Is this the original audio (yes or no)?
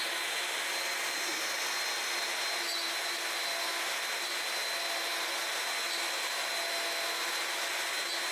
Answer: yes